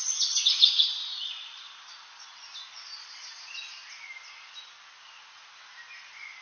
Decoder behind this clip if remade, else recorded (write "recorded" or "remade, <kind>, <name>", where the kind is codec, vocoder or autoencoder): recorded